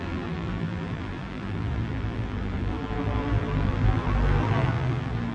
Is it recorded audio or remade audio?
remade